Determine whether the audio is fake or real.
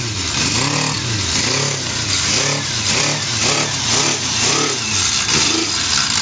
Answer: real